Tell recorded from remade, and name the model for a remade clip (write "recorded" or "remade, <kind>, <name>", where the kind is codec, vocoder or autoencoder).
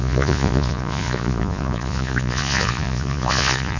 remade, vocoder, Vocos